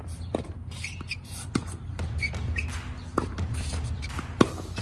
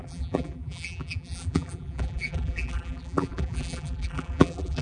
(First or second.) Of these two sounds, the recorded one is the first